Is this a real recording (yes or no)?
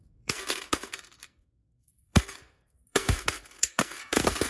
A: no